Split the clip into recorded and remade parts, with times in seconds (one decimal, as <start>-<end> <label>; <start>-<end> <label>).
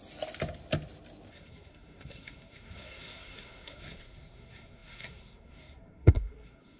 0.0-1.3 recorded; 1.3-6.8 remade